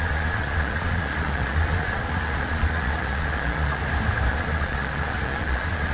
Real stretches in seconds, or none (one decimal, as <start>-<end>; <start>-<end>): 3.8-4.3